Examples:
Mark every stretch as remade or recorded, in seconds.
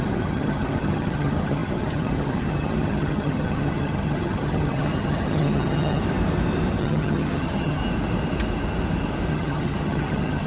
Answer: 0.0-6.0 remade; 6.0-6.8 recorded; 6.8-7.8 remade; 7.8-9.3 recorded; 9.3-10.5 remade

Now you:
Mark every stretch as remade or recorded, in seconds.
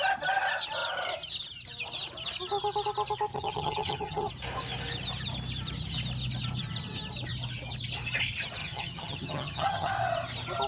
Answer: 0.0-3.3 recorded; 3.3-4.3 remade; 4.3-8.6 recorded; 8.6-9.9 remade; 9.9-10.7 recorded